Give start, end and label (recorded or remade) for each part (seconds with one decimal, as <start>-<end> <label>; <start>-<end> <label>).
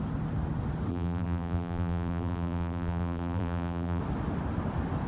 0.0-0.9 recorded; 0.9-4.0 remade; 4.0-5.1 recorded